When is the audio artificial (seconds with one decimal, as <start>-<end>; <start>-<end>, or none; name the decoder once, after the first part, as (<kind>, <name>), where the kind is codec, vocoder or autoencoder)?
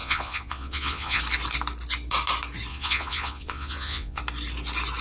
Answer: 0.0-1.2 (vocoder, Vocos); 2.7-4.2